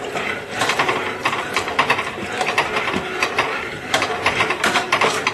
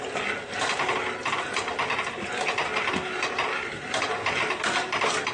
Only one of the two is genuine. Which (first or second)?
second